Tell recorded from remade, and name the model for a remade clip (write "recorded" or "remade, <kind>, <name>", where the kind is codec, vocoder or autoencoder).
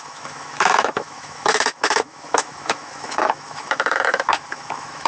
remade, autoencoder, DAC-VAE